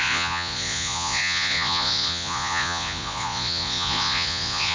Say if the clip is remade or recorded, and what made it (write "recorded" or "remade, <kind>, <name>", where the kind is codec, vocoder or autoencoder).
remade, vocoder, Vocos